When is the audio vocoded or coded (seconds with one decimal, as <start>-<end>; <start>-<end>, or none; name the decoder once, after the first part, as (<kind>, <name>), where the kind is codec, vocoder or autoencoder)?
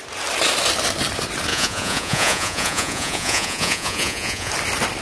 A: 1.5-4.5 (vocoder, Vocos)